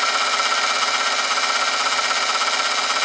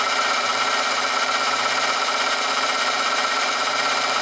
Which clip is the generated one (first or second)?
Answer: second